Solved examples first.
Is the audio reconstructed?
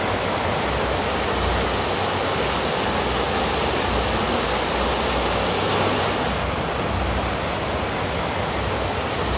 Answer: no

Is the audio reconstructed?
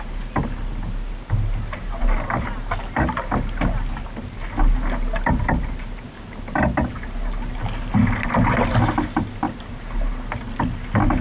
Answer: no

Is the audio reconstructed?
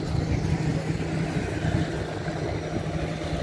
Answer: no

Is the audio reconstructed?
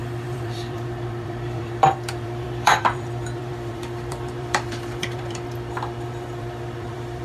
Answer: yes